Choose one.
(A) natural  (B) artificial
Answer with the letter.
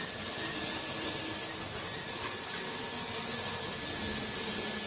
A